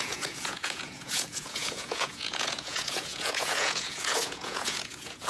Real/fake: fake